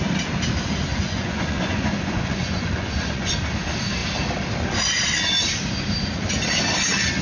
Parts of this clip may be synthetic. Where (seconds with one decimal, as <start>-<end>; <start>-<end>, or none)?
0.9-3.3

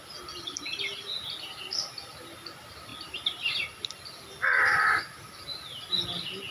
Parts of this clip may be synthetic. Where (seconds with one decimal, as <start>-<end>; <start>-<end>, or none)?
0.0-0.9; 2.1-6.5

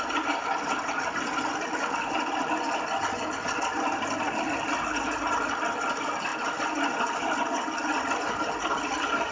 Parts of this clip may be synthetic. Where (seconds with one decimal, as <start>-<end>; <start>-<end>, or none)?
none

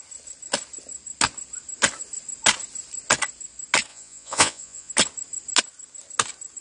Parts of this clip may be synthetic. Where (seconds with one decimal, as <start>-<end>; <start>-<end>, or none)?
3.9-4.9

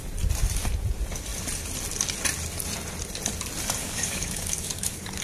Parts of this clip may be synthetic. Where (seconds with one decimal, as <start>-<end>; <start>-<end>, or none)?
3.8-5.2

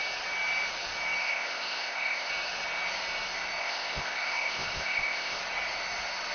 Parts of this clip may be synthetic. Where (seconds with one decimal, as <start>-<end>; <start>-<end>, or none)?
1.2-2.3; 3.6-5.4

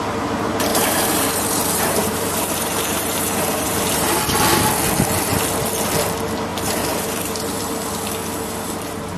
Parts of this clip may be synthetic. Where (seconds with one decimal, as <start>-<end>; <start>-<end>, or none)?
0.7-4.2; 6.5-7.6